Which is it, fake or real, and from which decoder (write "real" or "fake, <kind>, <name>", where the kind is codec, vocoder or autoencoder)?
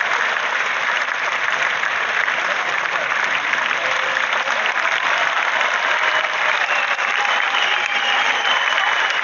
fake, vocoder, BigVGAN v2